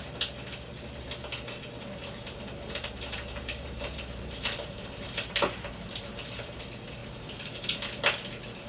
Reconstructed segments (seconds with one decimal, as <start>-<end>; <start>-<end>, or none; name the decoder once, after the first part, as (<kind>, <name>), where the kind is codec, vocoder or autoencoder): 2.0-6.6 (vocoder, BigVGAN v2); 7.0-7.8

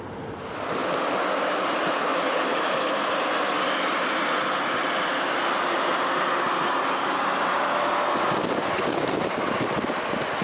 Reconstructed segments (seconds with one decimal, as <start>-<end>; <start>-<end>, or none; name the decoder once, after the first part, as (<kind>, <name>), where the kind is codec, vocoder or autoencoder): 0.8-1.4 (vocoder, BigVGAN v2); 2.5-3.5

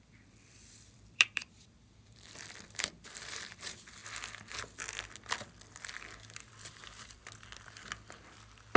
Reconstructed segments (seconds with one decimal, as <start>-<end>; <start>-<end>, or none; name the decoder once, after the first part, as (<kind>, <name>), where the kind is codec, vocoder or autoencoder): 0.0-4.0 (vocoder, BigVGAN v2); 6.2-7.2

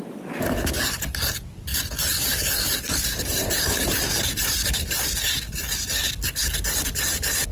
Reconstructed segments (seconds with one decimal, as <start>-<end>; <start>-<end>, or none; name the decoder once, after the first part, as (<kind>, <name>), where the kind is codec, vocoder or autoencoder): 1.7-5.1 (vocoder, BigVGAN v2)

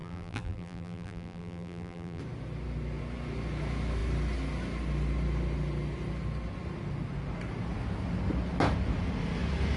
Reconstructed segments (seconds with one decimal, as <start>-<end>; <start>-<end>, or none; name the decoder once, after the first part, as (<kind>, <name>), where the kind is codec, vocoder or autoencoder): 0.0-2.2 (vocoder, BigVGAN v2)